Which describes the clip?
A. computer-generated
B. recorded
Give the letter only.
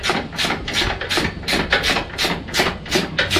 B